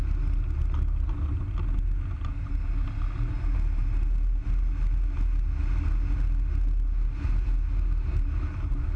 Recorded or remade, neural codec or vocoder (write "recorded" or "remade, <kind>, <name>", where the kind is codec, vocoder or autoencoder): recorded